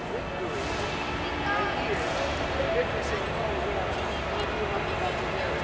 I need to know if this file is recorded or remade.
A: recorded